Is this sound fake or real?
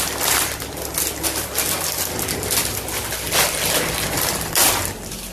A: real